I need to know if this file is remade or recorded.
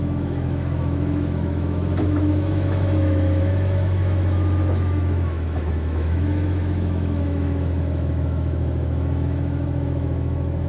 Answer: remade